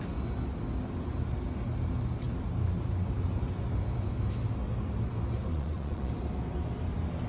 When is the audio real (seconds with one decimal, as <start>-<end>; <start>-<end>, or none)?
0.0-5.5; 6.1-7.3